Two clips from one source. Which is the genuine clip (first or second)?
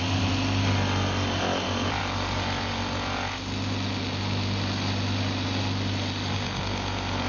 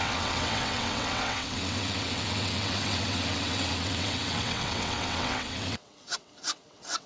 first